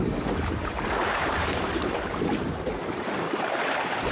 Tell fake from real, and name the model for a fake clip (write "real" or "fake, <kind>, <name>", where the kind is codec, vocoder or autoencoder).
fake, vocoder, BigVGAN v2